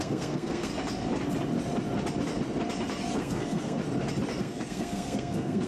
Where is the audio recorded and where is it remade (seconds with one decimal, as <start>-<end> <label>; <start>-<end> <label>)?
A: 0.0-0.7 remade; 0.7-3.2 recorded; 3.2-3.8 remade; 3.8-4.4 recorded; 4.4-5.7 remade